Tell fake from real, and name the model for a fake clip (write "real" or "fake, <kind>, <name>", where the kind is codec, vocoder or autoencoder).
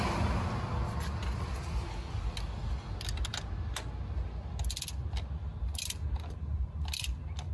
real